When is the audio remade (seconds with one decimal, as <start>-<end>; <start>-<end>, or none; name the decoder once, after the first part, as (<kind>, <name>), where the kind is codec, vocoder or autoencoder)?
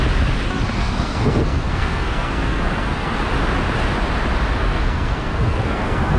0.8-3.2 (codec, SNAC); 4.6-6.2